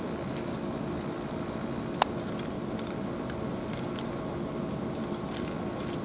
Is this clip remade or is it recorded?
recorded